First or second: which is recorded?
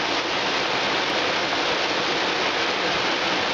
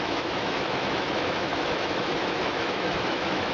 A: first